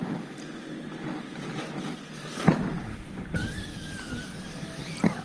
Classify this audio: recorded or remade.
remade